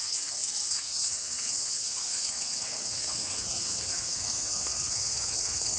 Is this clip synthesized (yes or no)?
yes